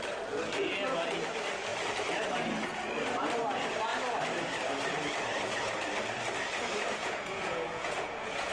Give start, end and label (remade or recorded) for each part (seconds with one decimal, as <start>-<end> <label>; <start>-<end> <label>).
0.0-7.0 recorded; 7.0-8.5 remade